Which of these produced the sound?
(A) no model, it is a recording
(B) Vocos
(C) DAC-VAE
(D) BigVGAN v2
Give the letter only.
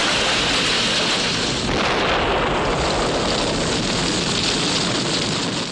A